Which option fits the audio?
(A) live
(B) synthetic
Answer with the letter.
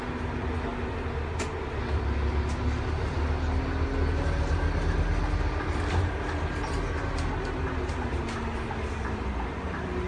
A